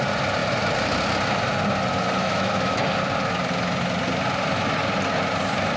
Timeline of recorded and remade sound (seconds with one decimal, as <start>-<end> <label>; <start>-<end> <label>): 0.0-2.2 recorded; 2.2-2.8 remade; 2.8-5.8 recorded